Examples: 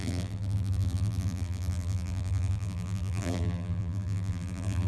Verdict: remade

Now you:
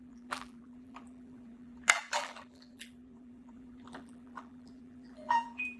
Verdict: remade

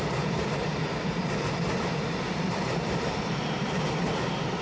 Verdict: remade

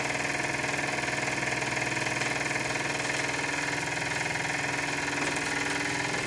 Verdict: recorded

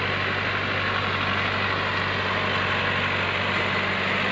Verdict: recorded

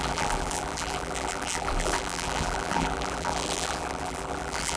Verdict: remade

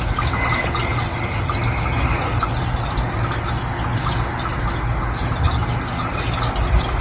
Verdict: recorded